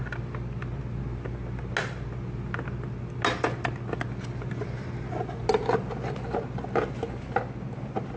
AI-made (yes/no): no